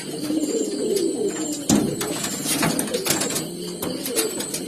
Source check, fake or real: real